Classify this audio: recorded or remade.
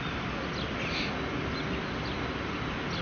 recorded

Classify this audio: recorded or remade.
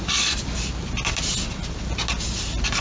recorded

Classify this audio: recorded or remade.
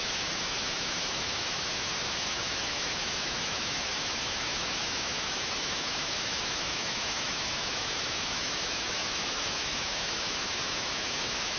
remade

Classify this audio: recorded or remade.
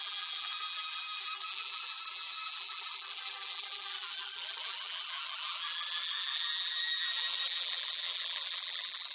remade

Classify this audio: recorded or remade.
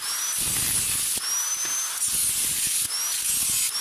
recorded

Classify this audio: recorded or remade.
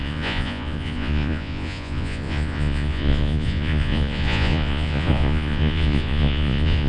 remade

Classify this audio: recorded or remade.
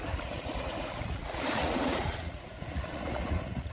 remade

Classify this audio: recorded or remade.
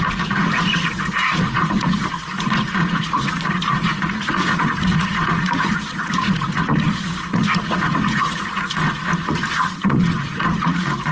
remade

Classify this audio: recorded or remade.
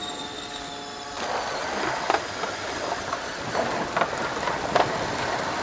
recorded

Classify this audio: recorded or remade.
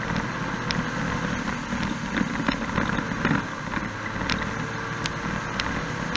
recorded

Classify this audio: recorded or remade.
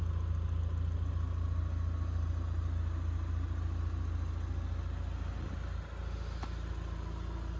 recorded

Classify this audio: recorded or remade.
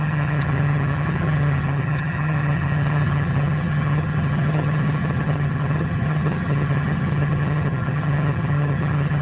remade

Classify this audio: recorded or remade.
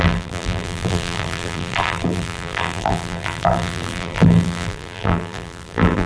remade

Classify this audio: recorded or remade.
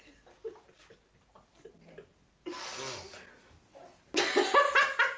recorded